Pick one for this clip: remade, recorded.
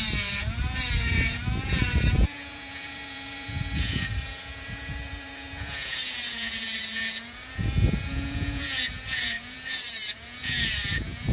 remade